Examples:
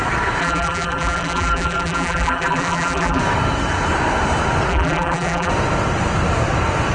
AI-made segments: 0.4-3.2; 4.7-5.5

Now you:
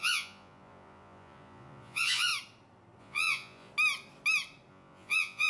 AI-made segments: 0.0-2.3; 3.0-3.7; 4.7-5.5

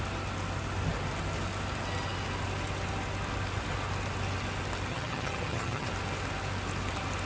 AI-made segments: 4.9-5.9